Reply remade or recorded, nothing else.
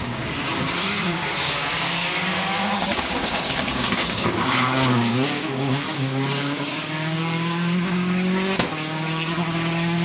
remade